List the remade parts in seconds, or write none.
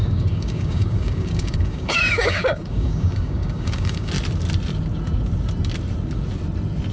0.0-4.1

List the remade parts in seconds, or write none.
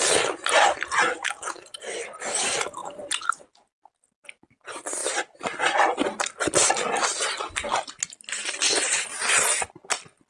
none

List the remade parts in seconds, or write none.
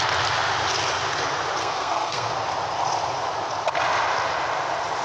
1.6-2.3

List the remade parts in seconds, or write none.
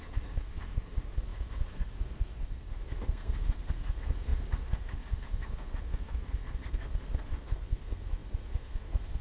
0.0-9.2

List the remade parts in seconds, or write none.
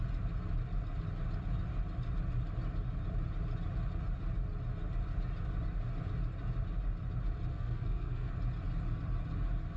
7.5-8.3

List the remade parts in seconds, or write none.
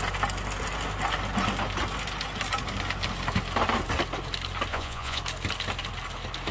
4.7-5.2